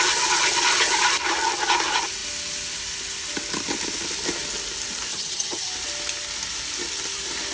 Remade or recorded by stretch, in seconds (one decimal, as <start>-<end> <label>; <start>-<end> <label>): 0.0-5.1 recorded; 5.1-5.7 remade; 5.7-7.5 recorded